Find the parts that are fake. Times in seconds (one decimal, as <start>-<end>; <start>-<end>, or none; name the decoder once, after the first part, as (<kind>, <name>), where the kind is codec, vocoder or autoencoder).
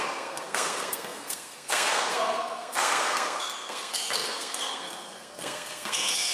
0.0-6.3 (codec, SNAC)